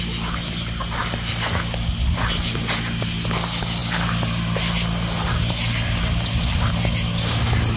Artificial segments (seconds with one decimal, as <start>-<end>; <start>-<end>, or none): none